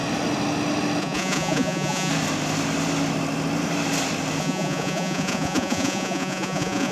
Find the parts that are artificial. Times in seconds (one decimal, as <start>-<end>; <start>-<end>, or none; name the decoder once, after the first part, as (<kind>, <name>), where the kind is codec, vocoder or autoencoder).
1.0-2.1 (vocoder, Vocos); 4.4-6.9